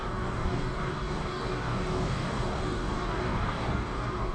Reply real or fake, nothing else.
fake